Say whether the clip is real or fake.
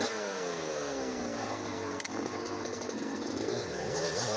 fake